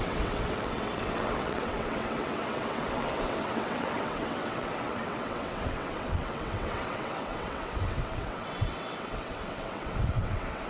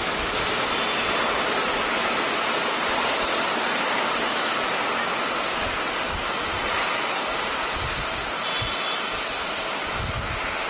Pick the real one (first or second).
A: second